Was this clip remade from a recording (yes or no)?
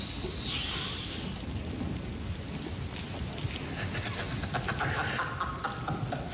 no